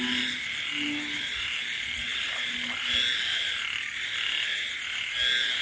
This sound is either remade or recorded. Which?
recorded